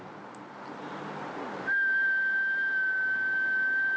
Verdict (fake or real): real